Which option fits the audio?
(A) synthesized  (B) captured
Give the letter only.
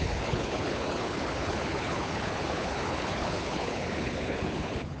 A